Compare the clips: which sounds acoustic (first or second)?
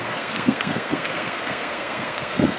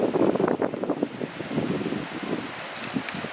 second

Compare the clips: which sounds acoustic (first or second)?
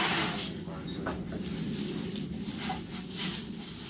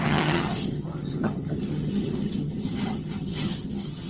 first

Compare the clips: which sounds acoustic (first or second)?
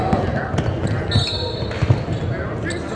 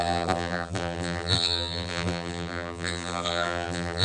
first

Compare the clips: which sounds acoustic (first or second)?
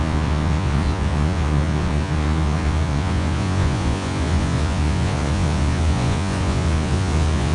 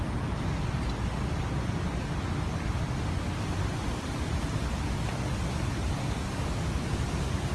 second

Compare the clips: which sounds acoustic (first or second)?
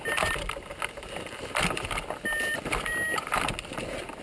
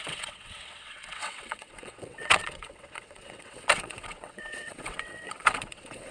first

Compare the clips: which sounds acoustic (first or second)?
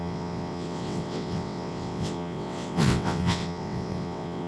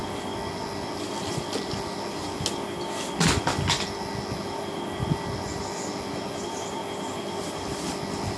second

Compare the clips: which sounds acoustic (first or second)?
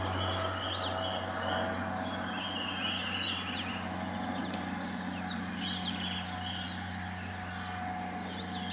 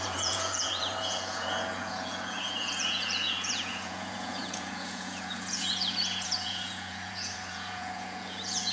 first